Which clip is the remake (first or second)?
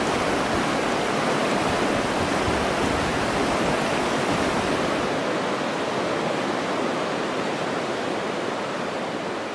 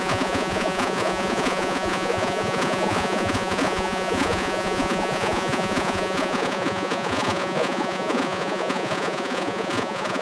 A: second